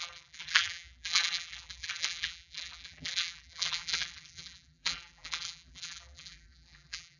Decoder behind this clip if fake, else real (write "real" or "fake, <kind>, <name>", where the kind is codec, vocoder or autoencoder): fake, vocoder, BigVGAN v2